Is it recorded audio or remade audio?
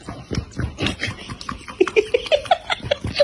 recorded